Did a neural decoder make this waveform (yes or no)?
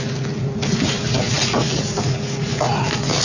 no